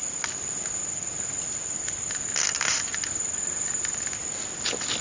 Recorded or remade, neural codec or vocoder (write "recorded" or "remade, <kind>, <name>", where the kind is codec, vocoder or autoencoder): recorded